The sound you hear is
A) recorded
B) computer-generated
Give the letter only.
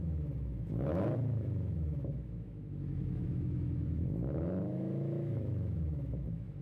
B